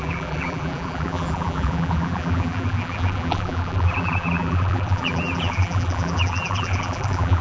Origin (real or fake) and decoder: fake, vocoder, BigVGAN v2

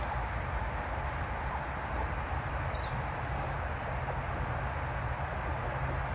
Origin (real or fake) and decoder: real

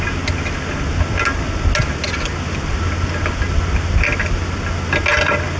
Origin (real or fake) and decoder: real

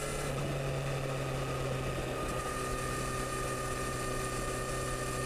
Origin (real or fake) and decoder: real